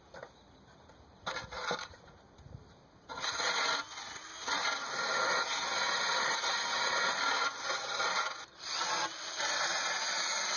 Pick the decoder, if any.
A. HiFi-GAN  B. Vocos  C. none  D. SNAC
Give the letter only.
C